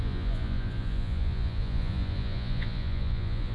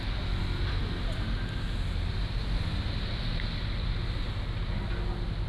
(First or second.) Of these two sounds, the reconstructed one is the first